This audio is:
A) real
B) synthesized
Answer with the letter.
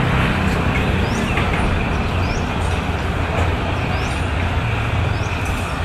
A